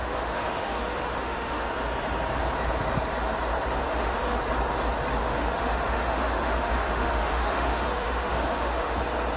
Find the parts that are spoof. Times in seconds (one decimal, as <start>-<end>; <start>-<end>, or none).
0.0-1.7; 3.8-4.4; 5.2-9.0